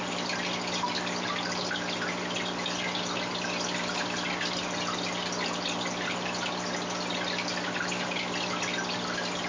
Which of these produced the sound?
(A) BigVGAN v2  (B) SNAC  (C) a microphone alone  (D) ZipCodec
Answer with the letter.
C